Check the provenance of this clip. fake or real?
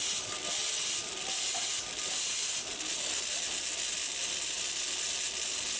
real